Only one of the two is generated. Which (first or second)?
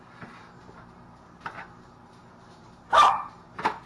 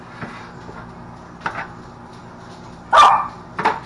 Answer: first